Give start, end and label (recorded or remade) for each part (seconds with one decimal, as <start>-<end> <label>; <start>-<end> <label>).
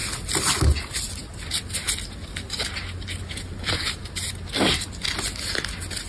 0.0-6.1 recorded